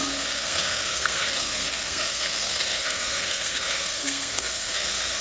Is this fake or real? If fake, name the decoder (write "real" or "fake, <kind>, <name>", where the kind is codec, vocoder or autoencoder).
fake, codec, SNAC